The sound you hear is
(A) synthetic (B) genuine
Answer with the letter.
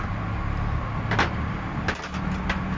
B